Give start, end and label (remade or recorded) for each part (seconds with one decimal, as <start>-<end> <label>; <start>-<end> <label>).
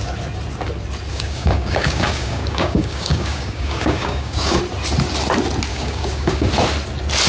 0.0-1.1 recorded; 1.1-4.6 remade; 4.6-5.7 recorded; 5.7-6.5 remade; 6.5-7.3 recorded